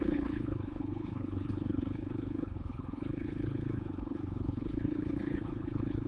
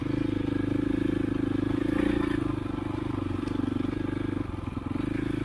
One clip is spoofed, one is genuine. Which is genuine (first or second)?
second